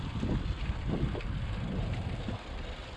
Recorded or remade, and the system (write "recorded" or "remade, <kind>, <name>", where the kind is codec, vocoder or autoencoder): recorded